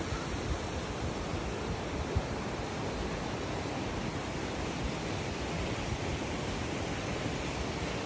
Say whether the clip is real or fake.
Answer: real